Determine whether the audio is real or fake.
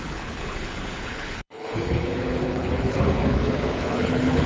fake